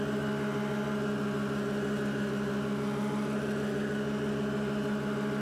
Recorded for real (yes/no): yes